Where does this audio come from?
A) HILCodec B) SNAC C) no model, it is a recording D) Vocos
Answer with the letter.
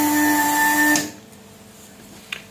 C